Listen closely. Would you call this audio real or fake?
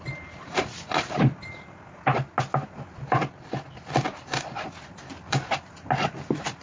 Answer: fake